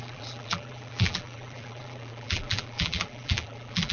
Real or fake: fake